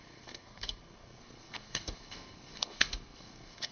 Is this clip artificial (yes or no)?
yes